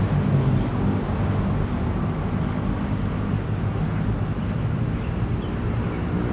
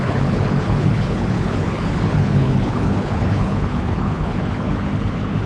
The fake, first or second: second